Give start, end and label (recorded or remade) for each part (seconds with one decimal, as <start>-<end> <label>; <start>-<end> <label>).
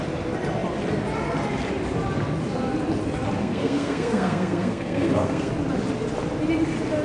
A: 0.0-3.4 recorded; 3.4-5.5 remade; 5.5-7.0 recorded